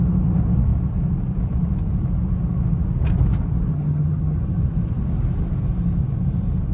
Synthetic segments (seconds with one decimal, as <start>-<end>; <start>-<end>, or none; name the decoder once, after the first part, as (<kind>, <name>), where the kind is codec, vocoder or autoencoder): 3.7-4.4 (vocoder, HiFi-GAN)